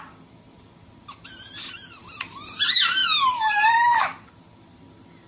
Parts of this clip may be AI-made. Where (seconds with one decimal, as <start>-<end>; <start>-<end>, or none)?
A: none